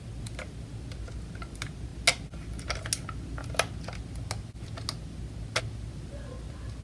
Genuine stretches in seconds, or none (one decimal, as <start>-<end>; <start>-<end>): 0.0-6.8